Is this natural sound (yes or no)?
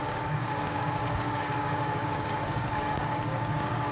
no